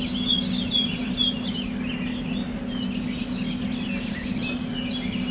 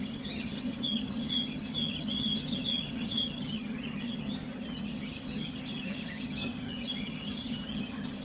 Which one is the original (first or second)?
first